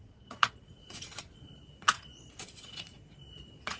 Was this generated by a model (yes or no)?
yes